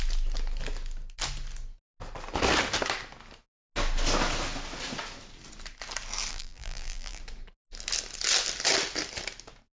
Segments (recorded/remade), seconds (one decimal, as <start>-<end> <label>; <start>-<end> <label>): 0.0-6.3 recorded; 6.3-7.2 remade; 7.2-9.8 recorded